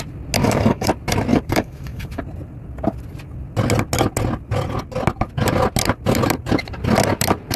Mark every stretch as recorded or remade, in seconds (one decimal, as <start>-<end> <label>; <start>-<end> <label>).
0.0-0.4 recorded; 0.4-0.9 remade; 0.9-1.3 recorded; 1.3-2.2 remade; 2.2-7.6 recorded